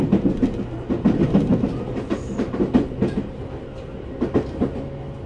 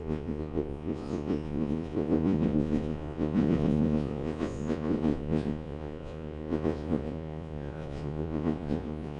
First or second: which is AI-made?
second